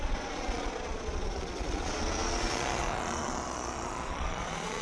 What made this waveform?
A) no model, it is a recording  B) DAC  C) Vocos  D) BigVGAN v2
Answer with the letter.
C